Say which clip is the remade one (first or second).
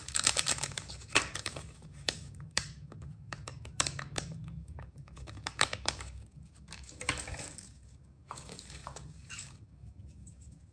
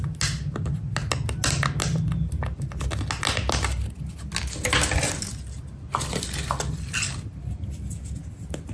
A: first